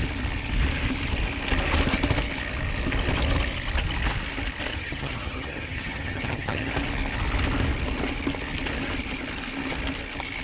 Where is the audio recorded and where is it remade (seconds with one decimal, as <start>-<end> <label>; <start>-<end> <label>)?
0.0-4.7 recorded; 4.7-6.7 remade; 6.7-10.4 recorded